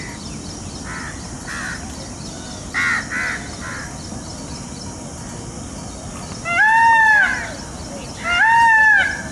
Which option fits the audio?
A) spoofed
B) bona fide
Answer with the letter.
B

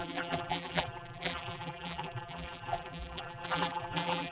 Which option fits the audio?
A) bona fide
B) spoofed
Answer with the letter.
B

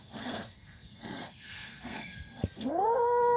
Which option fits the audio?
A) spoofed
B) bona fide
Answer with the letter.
A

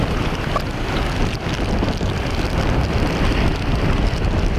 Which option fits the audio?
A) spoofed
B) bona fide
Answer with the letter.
B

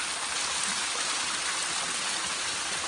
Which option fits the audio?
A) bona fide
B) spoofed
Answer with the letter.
B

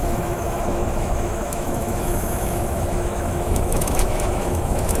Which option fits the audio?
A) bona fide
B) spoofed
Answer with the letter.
B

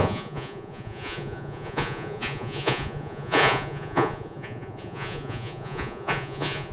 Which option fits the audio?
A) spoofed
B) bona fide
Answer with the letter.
A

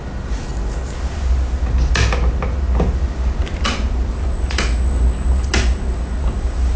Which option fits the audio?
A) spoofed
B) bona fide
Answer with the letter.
B